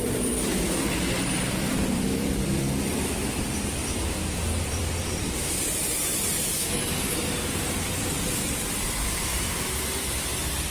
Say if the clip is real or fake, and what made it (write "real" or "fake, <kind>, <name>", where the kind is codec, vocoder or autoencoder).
fake, vocoder, BigVGAN v2